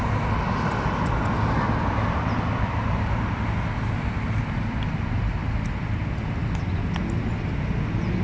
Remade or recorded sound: recorded